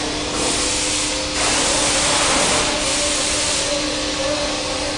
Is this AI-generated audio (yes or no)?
no